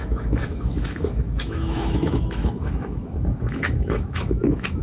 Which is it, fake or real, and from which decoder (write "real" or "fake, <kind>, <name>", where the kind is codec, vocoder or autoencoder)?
fake, autoencoder, DAC-VAE